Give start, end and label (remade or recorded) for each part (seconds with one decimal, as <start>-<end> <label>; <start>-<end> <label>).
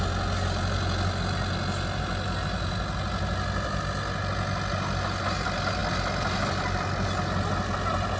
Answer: 0.0-8.2 recorded